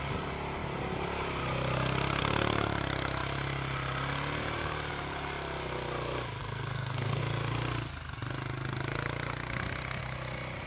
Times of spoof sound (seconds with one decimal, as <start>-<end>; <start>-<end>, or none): 6.4-7.2

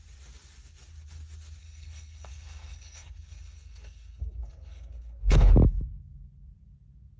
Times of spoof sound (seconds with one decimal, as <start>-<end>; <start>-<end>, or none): 1.6-5.5

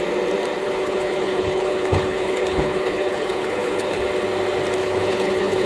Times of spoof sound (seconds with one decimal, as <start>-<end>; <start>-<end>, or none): 0.6-4.0; 4.8-5.7

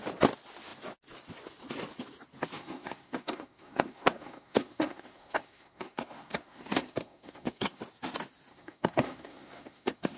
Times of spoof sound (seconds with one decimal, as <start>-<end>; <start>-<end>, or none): 2.6-7.8; 8.5-10.2

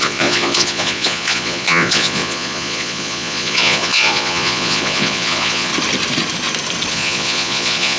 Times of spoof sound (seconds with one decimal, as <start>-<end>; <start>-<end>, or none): 0.0-5.7; 6.9-8.0